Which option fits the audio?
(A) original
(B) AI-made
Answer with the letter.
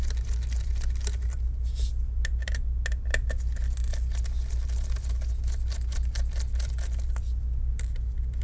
A